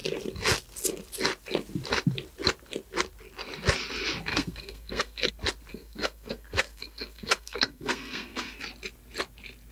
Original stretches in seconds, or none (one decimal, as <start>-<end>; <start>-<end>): 0.0-4.3; 5.3-5.7; 8.6-9.7